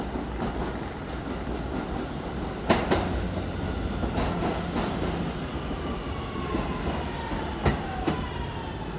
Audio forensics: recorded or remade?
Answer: recorded